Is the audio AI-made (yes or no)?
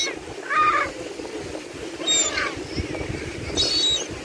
no